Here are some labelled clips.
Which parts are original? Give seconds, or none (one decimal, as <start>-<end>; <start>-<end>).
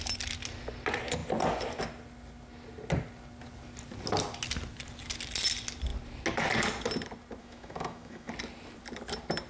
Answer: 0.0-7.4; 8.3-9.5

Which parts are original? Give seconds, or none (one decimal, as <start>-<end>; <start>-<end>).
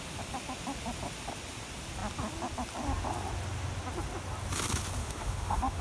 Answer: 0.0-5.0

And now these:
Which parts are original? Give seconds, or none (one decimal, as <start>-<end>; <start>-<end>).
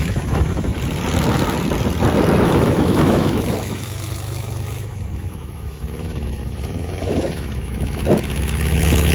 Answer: 0.7-2.4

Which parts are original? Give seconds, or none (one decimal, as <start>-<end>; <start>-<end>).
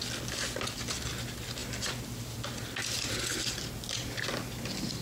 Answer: 0.0-5.0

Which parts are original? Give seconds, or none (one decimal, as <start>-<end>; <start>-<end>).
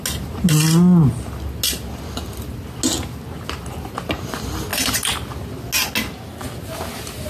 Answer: 0.0-7.3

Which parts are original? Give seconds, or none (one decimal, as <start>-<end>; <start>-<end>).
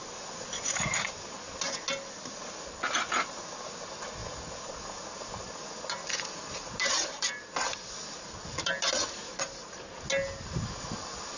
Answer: 0.0-11.4